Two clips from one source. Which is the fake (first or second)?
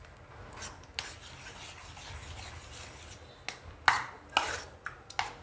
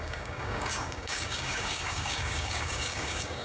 second